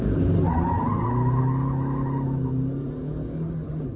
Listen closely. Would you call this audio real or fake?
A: real